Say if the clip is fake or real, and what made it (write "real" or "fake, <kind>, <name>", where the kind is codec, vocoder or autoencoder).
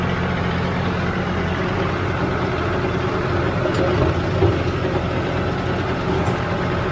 real